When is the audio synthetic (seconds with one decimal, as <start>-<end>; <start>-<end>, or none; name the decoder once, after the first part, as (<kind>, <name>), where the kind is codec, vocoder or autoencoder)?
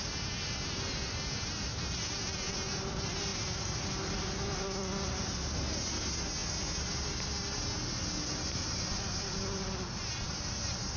none